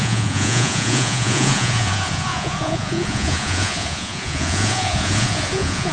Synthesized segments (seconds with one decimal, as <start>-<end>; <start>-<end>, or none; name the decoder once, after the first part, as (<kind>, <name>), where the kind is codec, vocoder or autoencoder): 0.0-5.9 (vocoder, Vocos)